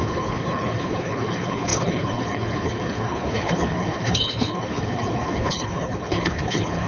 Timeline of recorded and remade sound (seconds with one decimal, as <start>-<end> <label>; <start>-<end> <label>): 0.0-6.9 remade